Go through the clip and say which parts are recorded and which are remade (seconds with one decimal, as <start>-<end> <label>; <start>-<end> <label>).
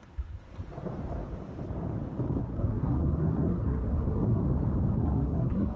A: 0.0-0.5 remade; 0.5-2.4 recorded; 2.4-4.4 remade; 4.4-4.9 recorded; 4.9-5.8 remade